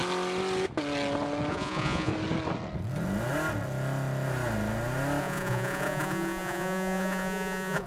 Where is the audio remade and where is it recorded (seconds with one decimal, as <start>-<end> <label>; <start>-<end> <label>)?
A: 0.0-1.5 recorded; 1.5-2.1 remade; 2.1-5.2 recorded; 5.2-7.9 remade